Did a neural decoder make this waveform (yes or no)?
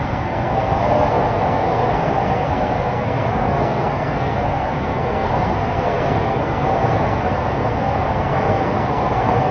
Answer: yes